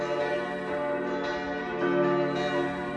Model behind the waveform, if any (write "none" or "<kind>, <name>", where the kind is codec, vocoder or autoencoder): none